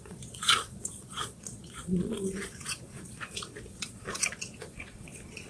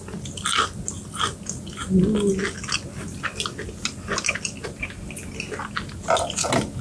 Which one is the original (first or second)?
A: second